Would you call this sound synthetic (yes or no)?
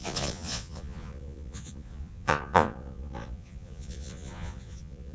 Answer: yes